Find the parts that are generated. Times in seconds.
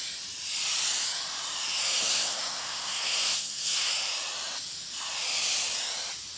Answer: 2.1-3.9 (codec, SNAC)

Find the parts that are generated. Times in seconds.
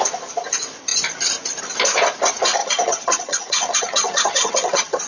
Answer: 2.6-5.1 (vocoder, HiFi-GAN)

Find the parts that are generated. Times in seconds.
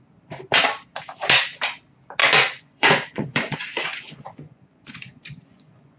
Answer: 2.2-6.0 (vocoder, Vocos)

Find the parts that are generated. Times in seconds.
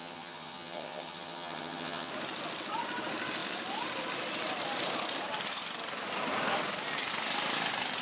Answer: 0.0-2.1 (vocoder, HiFi-GAN)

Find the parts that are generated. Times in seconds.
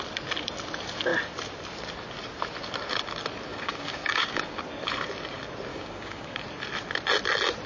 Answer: 3.5-4.6 (codec, DAC); 5.7-6.4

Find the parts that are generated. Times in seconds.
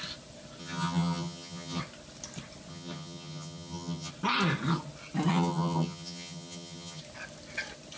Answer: 0.6-1.8 (vocoder, HiFi-GAN); 2.7-4.1; 5.3-7.0